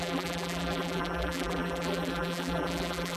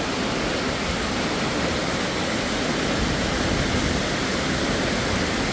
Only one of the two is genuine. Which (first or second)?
second